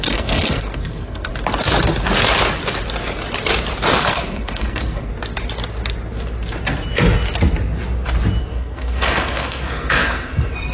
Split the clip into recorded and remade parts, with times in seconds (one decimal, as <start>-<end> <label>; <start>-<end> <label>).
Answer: 0.0-1.3 remade; 1.3-4.0 recorded; 4.0-5.1 remade; 5.1-8.4 recorded; 8.4-10.7 remade